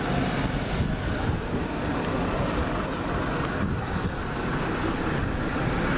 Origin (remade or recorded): recorded